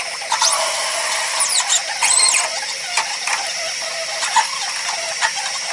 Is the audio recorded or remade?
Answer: recorded